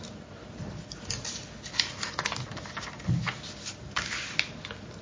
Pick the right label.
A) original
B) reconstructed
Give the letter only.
A